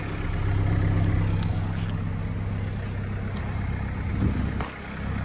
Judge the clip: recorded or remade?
recorded